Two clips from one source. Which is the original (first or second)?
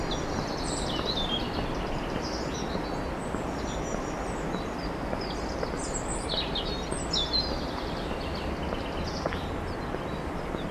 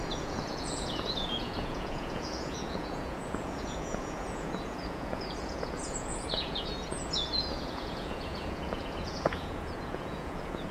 first